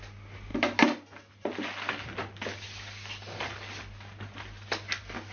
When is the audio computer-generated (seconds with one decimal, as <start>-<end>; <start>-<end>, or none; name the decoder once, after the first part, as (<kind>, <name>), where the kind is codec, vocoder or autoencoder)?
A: none